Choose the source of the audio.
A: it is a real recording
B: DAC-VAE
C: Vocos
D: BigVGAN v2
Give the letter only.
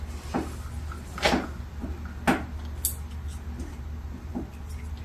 A